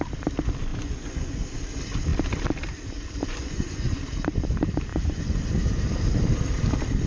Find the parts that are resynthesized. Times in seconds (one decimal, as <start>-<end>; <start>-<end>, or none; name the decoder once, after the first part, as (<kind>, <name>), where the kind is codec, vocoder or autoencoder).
0.7-1.4 (vocoder, Vocos); 3.2-4.0; 4.9-5.4